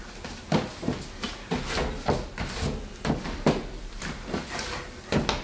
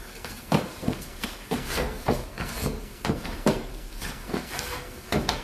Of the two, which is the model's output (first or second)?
second